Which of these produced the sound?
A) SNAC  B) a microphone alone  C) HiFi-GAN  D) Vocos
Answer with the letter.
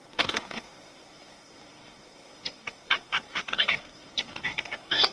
A